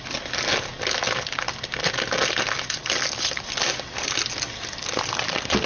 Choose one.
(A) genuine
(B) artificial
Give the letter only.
A